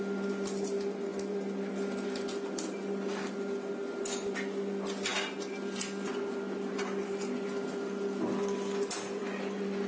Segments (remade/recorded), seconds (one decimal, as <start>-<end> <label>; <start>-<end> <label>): 0.0-9.9 recorded